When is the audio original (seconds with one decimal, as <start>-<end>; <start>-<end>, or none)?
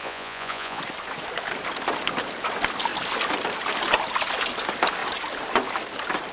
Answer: 0.8-6.3